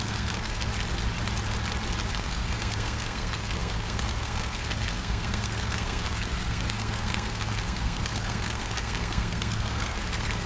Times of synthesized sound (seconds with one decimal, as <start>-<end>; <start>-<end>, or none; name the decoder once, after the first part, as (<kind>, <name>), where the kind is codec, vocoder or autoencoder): 0.0-0.7 (codec, SNAC); 2.1-10.5